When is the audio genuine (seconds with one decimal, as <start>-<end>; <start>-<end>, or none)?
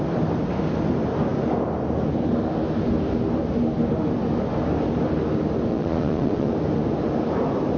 0.0-5.7; 6.5-7.8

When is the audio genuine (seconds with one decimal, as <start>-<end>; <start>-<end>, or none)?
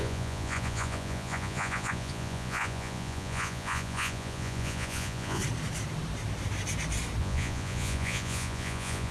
5.4-7.2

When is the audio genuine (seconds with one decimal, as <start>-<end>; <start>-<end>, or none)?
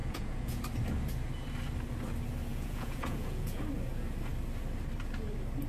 0.6-2.5; 3.6-5.7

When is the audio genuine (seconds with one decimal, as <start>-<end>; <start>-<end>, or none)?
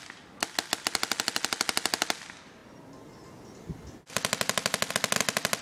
0.0-5.6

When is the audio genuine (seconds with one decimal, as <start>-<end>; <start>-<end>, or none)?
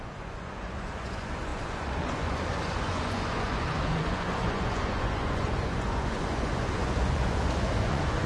none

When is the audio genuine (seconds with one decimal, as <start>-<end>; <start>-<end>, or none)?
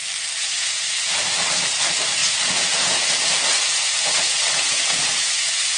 0.0-0.4; 1.2-2.2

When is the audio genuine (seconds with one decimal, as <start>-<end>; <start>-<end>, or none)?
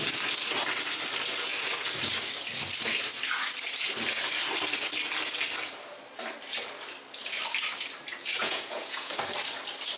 0.0-8.4; 9.1-10.0